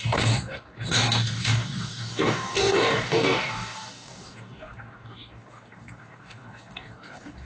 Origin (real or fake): fake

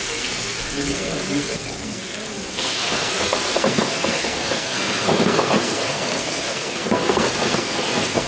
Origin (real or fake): fake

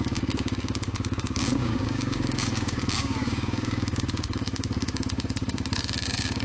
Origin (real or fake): fake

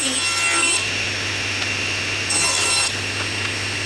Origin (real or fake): real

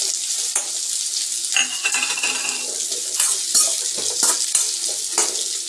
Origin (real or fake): real